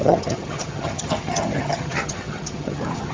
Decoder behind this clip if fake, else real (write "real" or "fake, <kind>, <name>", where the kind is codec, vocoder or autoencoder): fake, vocoder, HiFi-GAN